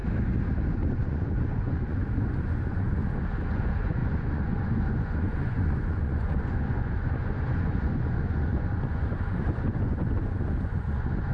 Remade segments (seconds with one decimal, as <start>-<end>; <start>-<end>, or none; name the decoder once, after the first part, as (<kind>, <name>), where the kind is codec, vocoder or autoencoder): 0.9-3.0 (vocoder, Vocos); 3.5-11.3